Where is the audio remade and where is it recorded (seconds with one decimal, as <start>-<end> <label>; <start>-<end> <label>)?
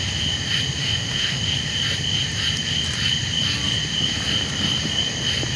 0.0-0.8 recorded; 0.8-1.4 remade; 1.4-5.6 recorded